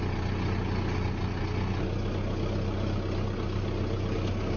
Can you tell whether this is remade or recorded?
recorded